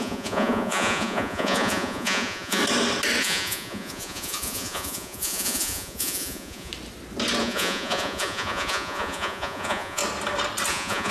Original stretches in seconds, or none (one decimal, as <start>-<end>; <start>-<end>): 2.6-3.2; 6.7-7.4; 10.0-10.7